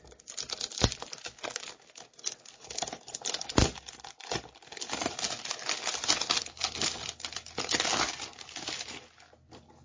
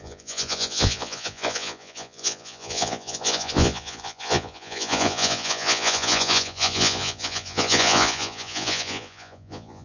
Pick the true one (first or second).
first